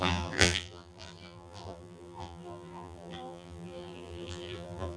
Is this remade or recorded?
remade